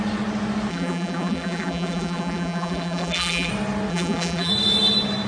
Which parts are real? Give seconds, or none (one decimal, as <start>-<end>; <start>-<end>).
0.0-0.7; 3.5-3.9; 4.5-5.3